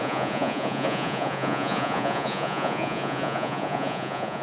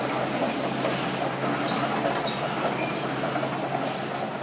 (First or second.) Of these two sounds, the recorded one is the second